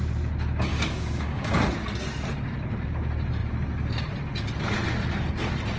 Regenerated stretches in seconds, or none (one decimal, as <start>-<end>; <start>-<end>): 0.7-1.6